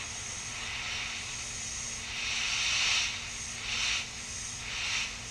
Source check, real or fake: real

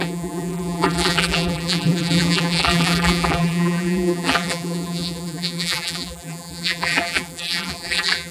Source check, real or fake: fake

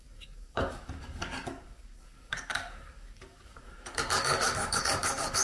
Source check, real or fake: fake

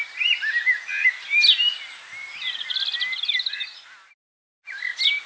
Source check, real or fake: real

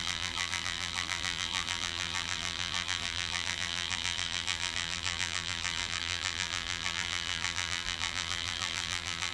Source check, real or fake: fake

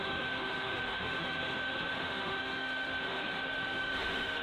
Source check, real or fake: fake